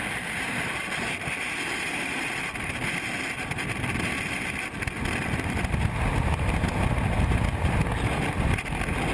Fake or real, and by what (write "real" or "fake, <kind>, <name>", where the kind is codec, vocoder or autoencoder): real